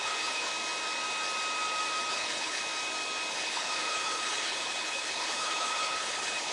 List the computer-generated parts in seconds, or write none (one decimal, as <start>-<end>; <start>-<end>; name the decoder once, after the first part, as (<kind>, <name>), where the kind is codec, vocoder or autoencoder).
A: 0.0-0.5 (codec, HILCodec); 2.1-2.6; 3.3-6.5